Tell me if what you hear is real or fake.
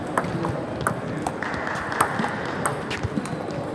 real